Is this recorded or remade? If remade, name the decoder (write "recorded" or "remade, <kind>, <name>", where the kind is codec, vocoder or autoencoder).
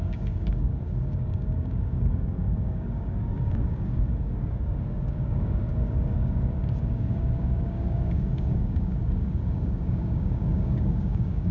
remade, codec, DAC